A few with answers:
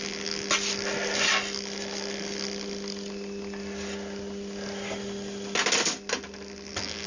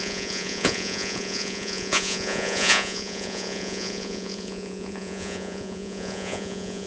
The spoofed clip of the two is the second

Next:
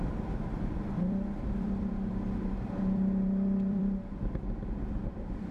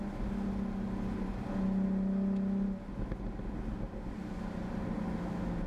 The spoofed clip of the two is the first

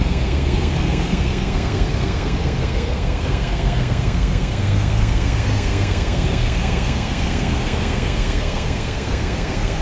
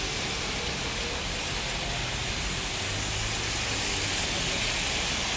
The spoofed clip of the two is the first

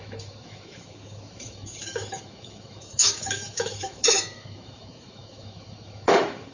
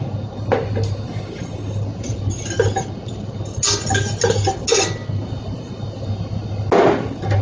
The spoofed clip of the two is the first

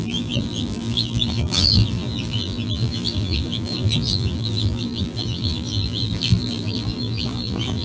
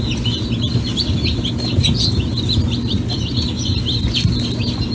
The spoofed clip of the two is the first